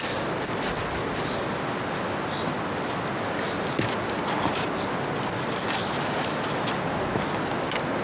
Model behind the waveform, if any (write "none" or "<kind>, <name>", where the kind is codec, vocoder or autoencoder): none